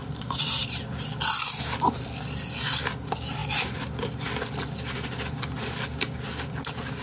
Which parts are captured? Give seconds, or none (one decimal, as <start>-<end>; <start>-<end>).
0.8-7.0